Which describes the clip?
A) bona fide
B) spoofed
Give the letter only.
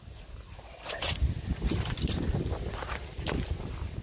A